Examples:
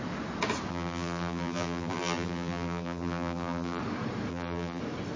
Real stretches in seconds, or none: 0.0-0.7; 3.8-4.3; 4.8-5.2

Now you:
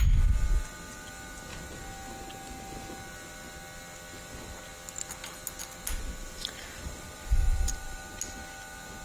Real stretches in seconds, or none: 0.0-6.2; 8.0-9.0